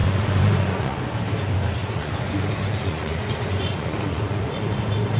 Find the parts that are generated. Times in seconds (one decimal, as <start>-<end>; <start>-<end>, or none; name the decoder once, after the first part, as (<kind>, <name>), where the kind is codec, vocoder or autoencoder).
0.0-1.0 (vocoder, Vocos); 1.8-5.2